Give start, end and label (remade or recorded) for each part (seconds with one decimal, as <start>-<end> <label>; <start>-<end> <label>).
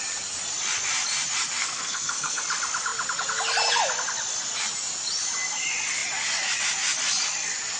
0.0-1.6 recorded; 1.6-2.4 remade; 2.4-7.8 recorded